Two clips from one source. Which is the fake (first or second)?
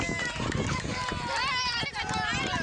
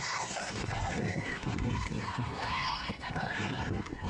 second